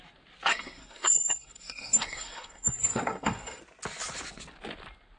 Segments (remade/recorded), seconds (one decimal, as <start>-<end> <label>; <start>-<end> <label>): 0.0-0.5 recorded; 0.5-3.6 remade; 3.6-5.2 recorded